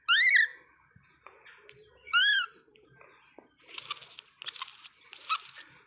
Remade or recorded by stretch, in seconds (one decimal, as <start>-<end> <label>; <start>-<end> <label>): 0.0-2.7 recorded; 2.7-3.8 remade; 3.8-5.9 recorded